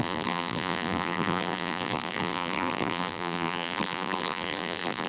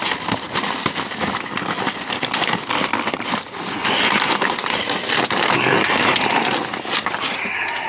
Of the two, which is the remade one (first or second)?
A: first